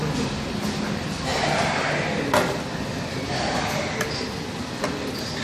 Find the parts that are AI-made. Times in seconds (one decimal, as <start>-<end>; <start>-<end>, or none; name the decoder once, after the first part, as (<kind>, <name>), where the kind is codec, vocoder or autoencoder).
0.0-1.3 (vocoder, BigVGAN v2); 4.5-5.4